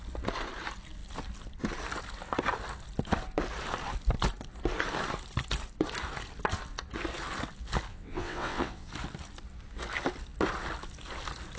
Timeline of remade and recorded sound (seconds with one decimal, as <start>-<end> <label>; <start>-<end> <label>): 0.0-7.9 recorded; 7.9-8.9 remade; 8.9-11.6 recorded